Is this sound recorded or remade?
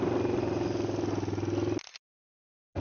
recorded